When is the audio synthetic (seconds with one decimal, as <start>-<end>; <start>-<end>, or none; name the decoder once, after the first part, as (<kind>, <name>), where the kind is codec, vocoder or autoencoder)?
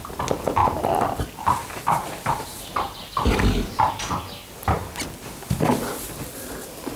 none